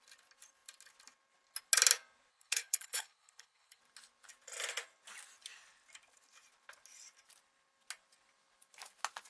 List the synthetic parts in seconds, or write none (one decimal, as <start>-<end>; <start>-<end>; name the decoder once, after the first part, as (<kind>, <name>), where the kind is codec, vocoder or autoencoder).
2.3-3.8 (codec, HILCodec)